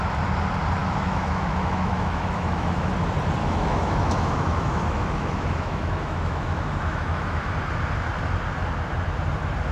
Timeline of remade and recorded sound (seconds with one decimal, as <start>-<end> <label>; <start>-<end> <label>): 0.0-0.8 recorded; 0.8-2.9 remade; 2.9-3.4 recorded; 3.4-7.5 remade; 7.5-9.7 recorded